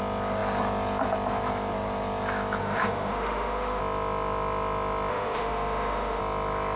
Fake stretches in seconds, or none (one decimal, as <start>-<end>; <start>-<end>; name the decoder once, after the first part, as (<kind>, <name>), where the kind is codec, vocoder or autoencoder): 2.6-3.8 (autoencoder, DAC-VAE); 5.1-6.2